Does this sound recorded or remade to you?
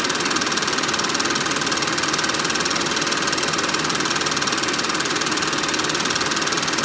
recorded